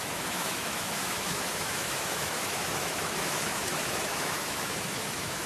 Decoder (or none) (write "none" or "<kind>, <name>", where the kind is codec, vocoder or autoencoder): autoencoder, DAC-VAE